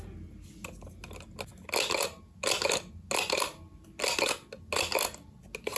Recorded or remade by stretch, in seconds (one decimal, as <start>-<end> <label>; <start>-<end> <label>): 0.0-5.8 recorded

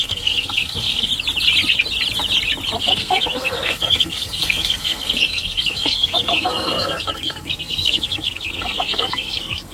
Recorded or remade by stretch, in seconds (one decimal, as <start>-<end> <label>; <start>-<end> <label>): 0.0-1.1 remade; 1.1-2.8 recorded; 2.8-9.7 remade

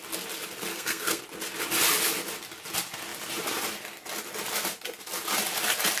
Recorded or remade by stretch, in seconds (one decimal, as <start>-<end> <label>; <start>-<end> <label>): 0.0-0.7 recorded; 0.7-1.2 remade; 1.2-6.0 recorded

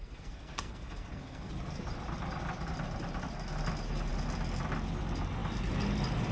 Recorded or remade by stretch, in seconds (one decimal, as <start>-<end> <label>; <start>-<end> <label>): 0.0-1.5 remade; 1.5-6.3 recorded

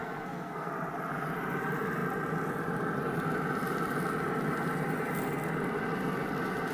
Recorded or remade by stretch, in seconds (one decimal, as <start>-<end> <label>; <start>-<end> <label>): 0.0-0.7 remade; 0.7-6.7 recorded

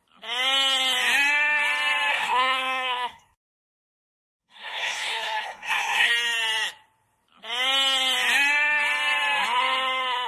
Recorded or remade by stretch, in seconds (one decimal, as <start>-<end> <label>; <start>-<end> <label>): 0.0-2.1 recorded; 2.1-6.1 remade; 6.1-10.3 recorded

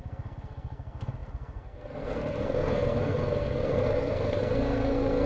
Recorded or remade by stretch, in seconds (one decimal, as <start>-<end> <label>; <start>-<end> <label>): 0.0-5.3 remade

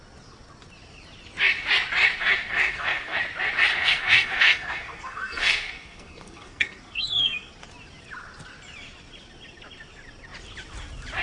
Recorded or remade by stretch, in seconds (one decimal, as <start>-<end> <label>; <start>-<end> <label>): 0.0-2.2 recorded; 2.2-3.2 remade; 3.2-3.7 recorded; 3.7-7.5 remade; 7.5-11.2 recorded